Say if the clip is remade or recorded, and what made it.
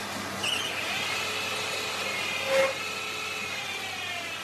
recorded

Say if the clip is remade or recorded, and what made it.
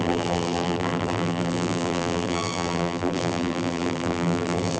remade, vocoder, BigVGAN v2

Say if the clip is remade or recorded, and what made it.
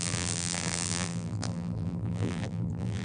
remade, vocoder, BigVGAN v2